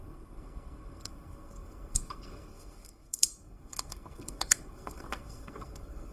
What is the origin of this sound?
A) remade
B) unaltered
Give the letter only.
A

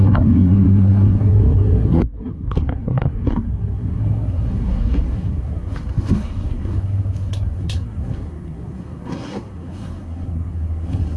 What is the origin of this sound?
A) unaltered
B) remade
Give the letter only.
B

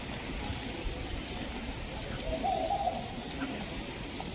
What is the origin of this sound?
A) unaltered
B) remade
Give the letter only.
A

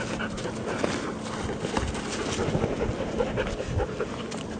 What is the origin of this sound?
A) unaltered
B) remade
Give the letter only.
A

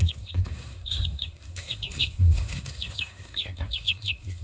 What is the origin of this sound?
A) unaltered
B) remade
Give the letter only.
B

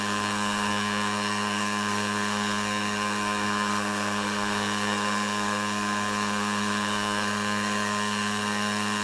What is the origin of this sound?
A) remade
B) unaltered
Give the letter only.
A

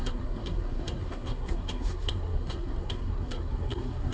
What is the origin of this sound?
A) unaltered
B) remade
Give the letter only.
B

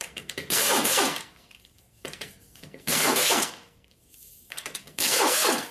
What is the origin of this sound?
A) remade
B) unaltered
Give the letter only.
A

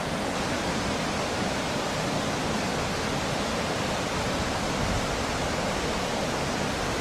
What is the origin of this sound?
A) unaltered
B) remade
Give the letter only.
A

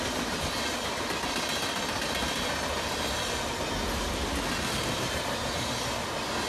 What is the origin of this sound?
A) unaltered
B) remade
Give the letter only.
A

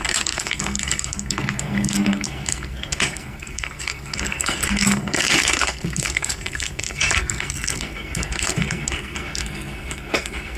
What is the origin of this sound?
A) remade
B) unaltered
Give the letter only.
A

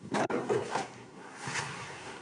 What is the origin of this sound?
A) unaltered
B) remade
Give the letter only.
B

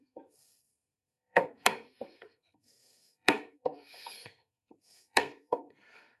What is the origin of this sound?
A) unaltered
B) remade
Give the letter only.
B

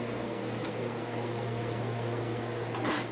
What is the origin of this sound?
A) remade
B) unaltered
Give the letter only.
A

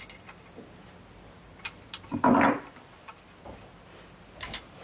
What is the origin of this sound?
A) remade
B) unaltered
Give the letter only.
B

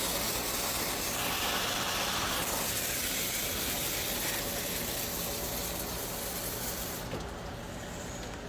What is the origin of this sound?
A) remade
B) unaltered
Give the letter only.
B